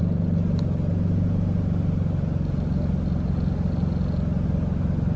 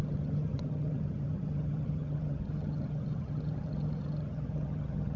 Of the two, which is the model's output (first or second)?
second